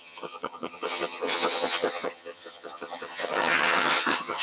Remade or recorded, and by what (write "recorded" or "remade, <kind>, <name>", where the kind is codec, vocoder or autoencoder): remade, vocoder, HiFi-GAN